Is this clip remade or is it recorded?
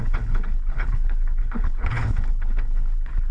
remade